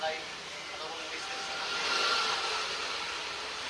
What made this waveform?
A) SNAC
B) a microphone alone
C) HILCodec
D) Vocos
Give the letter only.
B